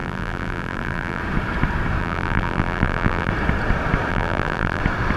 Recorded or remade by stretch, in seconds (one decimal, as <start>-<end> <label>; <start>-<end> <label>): 0.0-1.2 remade; 1.2-2.0 recorded; 2.0-3.3 remade; 3.3-4.1 recorded; 4.1-4.8 remade; 4.8-5.2 recorded